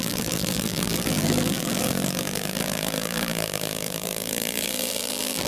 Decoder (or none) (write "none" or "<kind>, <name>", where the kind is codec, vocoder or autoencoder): vocoder, BigVGAN v2